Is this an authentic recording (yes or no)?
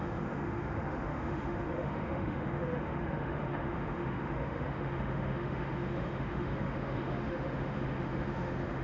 no